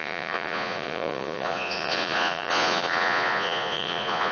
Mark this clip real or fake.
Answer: fake